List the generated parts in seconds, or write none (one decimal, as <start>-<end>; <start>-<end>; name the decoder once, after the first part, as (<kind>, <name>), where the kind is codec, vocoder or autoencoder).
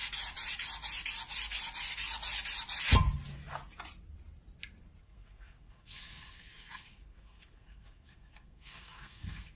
5.0-9.6 (codec, SNAC)